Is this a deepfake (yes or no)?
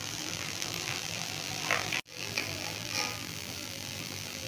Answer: yes